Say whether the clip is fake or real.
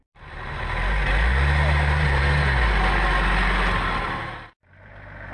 real